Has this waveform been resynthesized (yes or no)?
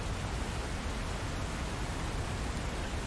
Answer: no